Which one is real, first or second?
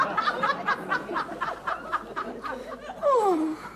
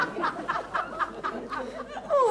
second